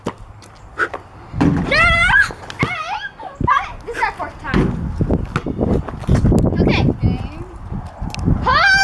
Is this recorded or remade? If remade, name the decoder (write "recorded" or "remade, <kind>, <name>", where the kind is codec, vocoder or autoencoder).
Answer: recorded